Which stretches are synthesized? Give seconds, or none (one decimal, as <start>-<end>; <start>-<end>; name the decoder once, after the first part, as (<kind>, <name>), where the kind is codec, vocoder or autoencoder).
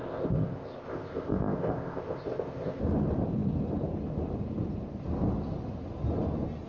0.0-2.8 (codec, ZipCodec)